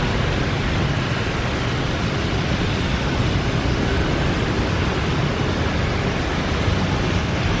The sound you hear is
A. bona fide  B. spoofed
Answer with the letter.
A